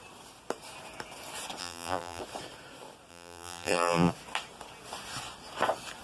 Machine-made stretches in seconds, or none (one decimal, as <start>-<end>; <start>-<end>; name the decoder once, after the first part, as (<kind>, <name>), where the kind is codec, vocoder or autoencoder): 1.6-2.2 (vocoder, BigVGAN v2); 3.1-4.1